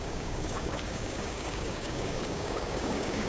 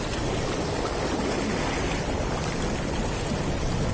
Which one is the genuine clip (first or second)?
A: second